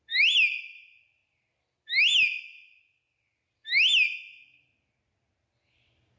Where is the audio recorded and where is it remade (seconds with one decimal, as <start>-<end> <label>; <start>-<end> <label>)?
0.0-6.2 recorded